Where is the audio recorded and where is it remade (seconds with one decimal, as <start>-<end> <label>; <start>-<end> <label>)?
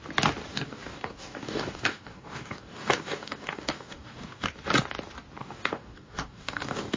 0.0-0.5 recorded; 0.5-4.5 remade; 4.5-5.4 recorded; 5.4-7.0 remade